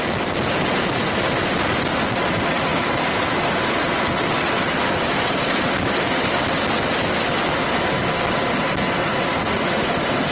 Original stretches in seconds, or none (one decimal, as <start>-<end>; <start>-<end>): 0.0-9.0; 9.9-10.3